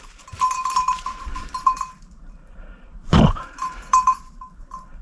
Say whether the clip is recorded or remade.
remade